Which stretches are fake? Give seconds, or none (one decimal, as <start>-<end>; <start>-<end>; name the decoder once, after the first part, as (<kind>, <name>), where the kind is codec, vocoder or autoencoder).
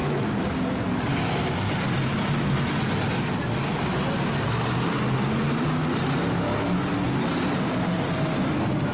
none